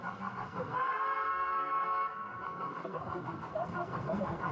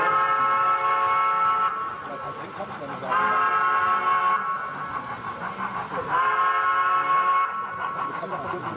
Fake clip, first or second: first